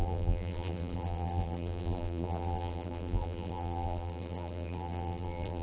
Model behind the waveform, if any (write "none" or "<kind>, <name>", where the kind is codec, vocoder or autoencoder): vocoder, BigVGAN v2